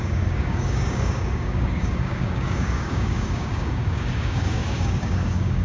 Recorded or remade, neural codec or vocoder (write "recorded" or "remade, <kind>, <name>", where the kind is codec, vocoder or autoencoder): remade, codec, DAC